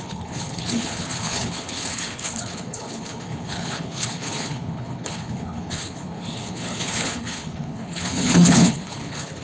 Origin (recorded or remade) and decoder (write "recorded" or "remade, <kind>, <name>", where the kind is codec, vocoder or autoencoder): remade, codec, HILCodec